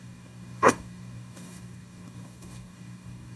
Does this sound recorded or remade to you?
remade